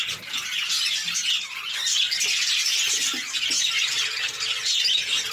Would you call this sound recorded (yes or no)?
yes